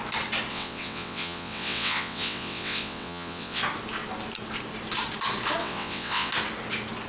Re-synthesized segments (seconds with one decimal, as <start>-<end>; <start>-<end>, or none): 0.5-3.6; 5.6-6.3